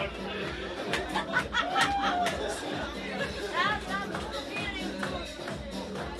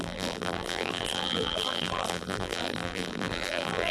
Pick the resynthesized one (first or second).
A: second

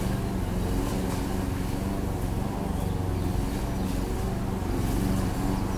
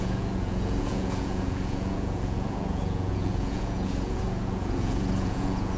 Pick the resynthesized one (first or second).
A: second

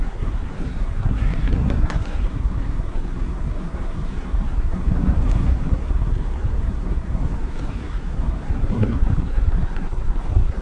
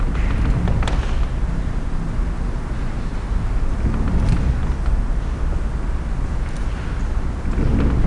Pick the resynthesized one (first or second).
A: first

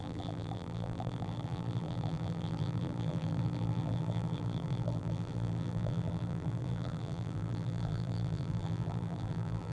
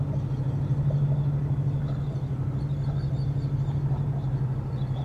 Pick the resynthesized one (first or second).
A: first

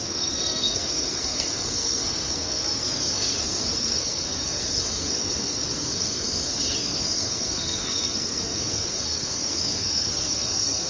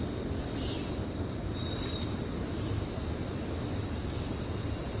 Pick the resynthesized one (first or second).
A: first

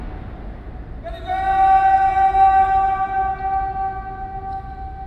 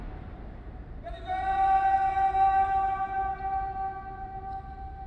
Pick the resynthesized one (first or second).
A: second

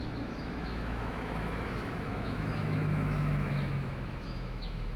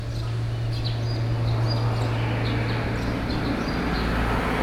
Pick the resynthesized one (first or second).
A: first